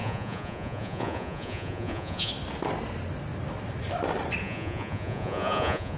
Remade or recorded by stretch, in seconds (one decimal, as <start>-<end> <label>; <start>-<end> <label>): 0.0-2.3 remade; 2.3-4.4 recorded; 4.4-6.0 remade